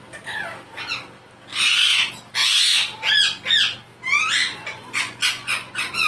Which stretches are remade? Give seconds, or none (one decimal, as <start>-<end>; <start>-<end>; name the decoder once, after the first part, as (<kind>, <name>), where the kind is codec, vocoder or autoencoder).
1.5-2.1 (vocoder, Vocos); 4.4-6.1